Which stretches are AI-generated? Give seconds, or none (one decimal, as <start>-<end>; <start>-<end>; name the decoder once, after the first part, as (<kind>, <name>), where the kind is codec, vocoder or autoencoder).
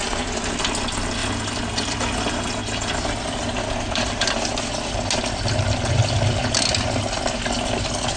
3.4-4.7 (vocoder, BigVGAN v2)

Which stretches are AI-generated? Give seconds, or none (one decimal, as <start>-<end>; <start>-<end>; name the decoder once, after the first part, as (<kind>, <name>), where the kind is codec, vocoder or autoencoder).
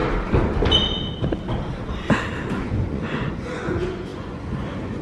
2.5-5.0 (vocoder, Vocos)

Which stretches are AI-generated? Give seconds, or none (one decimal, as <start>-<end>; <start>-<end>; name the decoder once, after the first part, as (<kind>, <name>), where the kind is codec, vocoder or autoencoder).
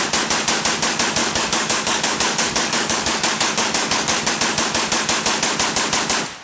1.2-4.3 (codec, DAC)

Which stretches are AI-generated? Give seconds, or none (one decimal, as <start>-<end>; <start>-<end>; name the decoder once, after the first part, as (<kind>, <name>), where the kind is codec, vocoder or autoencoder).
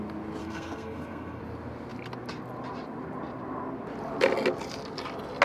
0.4-1.4 (codec, SNAC)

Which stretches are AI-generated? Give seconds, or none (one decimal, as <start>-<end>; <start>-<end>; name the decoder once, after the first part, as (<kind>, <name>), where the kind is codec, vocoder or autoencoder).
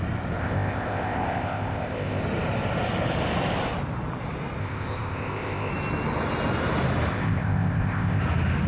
0.4-2.2 (codec, ZipCodec); 4.6-5.7; 7.1-8.2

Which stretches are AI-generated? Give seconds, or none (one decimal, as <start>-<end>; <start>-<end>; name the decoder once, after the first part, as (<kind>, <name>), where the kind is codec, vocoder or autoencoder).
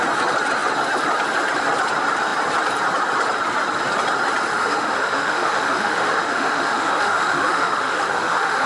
4.5-8.7 (autoencoder, DAC-VAE)